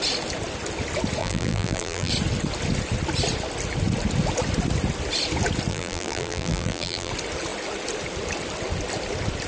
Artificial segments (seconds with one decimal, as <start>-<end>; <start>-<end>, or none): 1.2-2.1; 5.7-7.1